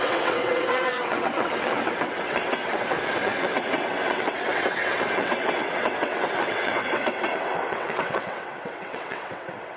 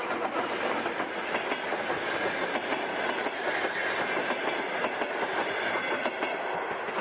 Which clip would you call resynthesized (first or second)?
first